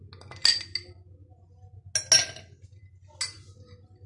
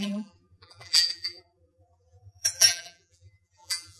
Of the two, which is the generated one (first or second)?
second